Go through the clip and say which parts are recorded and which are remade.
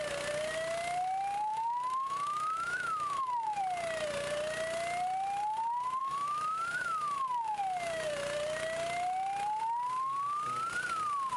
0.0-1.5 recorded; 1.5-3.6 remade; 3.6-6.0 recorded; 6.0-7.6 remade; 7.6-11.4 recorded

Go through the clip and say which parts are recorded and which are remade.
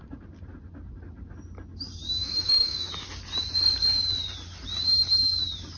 0.0-2.2 recorded; 2.2-2.9 remade; 2.9-5.8 recorded